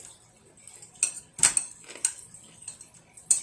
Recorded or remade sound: recorded